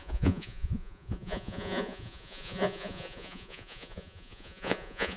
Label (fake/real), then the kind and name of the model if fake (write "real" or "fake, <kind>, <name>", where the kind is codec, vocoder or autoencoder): fake, vocoder, Vocos